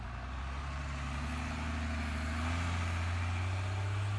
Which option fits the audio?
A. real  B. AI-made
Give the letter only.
A